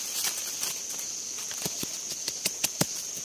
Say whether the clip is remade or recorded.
recorded